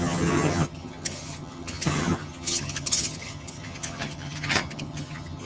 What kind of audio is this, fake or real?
fake